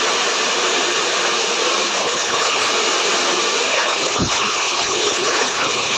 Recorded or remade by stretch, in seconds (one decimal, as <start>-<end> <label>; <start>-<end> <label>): 0.0-2.0 recorded; 2.0-2.7 remade; 2.7-3.7 recorded; 3.7-6.0 remade